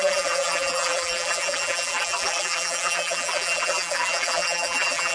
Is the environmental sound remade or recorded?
remade